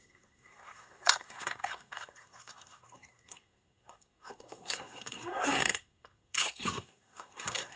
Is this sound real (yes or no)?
no